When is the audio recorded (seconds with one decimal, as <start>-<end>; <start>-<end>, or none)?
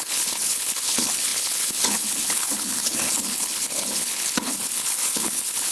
none